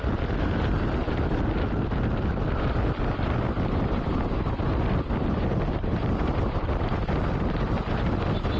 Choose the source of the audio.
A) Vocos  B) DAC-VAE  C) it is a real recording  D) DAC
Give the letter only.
C